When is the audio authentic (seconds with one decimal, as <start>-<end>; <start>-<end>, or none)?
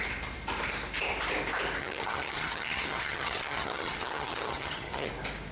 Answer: 0.0-1.8; 5.1-5.5